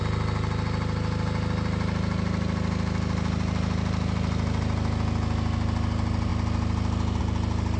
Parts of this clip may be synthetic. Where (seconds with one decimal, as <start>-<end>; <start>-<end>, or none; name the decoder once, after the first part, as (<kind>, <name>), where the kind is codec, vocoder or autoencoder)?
none